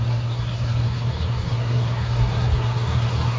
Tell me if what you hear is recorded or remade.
remade